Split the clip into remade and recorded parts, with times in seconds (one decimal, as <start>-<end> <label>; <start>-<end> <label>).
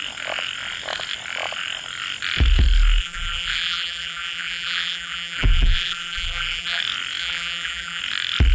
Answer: 0.0-3.0 recorded; 3.0-6.8 remade; 6.8-7.2 recorded; 7.2-8.0 remade; 8.0-8.5 recorded